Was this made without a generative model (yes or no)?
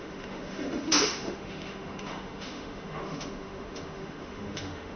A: no